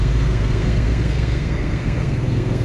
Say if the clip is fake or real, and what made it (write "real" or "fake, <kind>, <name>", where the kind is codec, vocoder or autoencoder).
fake, codec, SNAC